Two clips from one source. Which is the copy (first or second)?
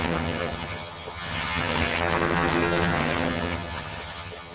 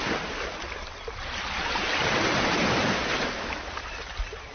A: first